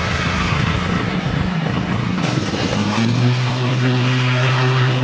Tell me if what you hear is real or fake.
fake